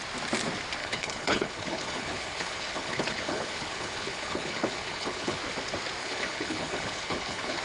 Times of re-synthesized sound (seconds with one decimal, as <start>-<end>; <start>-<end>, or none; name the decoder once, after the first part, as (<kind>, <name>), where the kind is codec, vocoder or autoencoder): 0.8-5.4 (codec, HILCodec); 6.0-7.6